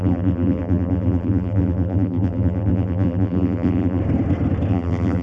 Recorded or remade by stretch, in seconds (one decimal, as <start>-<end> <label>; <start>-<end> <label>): 0.0-4.0 remade; 4.0-4.7 recorded; 4.7-5.2 remade